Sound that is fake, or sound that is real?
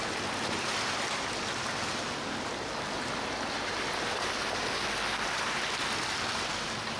real